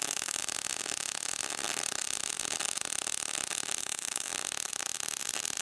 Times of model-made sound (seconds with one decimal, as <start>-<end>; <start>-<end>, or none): 0.0-0.4; 3.8-4.3

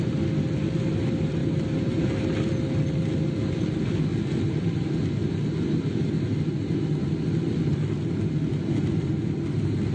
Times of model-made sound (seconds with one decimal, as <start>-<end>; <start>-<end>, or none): 1.4-2.0; 4.1-5.0

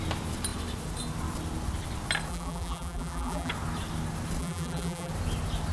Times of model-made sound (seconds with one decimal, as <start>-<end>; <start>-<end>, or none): 2.3-3.5; 4.4-5.1

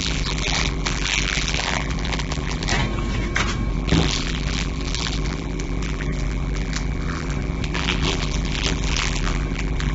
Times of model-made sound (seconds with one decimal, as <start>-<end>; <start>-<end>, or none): 0.0-2.7; 3.7-9.9

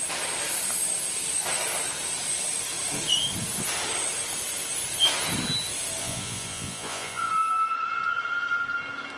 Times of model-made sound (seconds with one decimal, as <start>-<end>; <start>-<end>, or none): 6.0-7.3

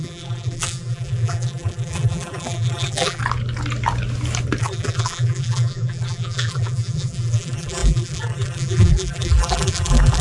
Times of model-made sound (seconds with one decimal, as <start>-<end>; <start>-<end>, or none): 0.0-3.2; 4.6-10.2

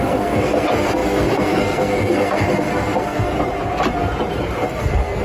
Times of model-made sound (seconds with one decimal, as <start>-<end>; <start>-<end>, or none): 0.0-3.3; 4.7-5.2